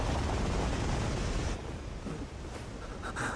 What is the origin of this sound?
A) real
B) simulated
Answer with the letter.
A